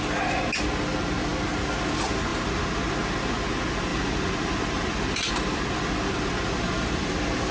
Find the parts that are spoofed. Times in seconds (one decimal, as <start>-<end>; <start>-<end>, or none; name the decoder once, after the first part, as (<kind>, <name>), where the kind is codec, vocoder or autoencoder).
2.3-2.9 (vocoder, BigVGAN v2); 3.9-7.5